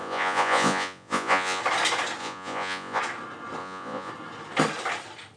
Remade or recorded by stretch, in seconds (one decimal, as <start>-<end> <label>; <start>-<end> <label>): 0.0-1.6 remade; 1.6-2.2 recorded; 2.2-3.0 remade; 3.0-3.6 recorded; 3.6-4.1 remade; 4.1-5.4 recorded